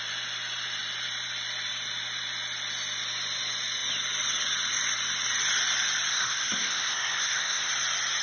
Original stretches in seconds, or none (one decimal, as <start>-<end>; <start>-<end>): 0.0-6.1; 7.7-8.2